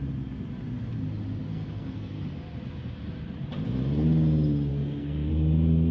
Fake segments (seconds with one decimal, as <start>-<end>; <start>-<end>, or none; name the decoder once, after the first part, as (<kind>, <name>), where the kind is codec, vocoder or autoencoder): 1.5-2.1 (codec, SNAC); 4.7-5.3